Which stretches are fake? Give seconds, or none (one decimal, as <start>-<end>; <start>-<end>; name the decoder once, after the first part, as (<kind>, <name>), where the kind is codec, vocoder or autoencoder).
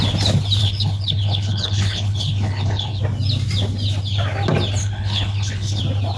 0.6-3.0 (codec, HILCodec); 4.8-5.8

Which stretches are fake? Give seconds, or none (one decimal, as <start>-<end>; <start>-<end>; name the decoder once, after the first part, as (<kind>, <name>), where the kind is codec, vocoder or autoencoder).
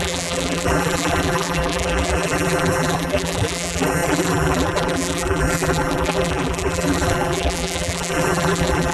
0.0-8.9 (vocoder, BigVGAN v2)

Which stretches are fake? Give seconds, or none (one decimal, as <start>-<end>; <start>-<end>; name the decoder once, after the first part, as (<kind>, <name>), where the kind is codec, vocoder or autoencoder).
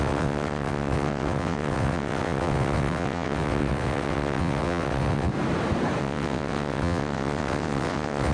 0.0-5.3 (vocoder, WaveNeXt); 6.0-8.3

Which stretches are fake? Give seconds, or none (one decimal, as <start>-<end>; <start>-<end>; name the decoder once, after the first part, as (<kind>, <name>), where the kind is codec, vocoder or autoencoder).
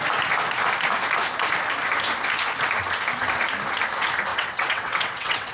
4.3-5.5 (vocoder, WaveNeXt)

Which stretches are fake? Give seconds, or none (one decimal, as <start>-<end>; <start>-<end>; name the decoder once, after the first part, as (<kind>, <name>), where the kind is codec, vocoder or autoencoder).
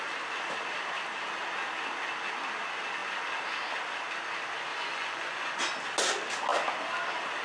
4.7-5.6 (vocoder, Vocos)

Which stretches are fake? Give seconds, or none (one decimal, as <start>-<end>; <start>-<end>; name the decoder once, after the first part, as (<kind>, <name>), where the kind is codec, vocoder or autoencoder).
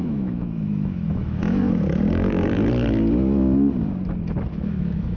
0.0-1.4 (autoencoder, DAC-VAE); 4.5-5.2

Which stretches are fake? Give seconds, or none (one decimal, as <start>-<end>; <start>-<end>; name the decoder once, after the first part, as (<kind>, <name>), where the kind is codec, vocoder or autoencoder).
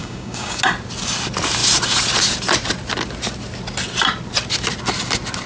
0.0-0.6 (codec, DAC)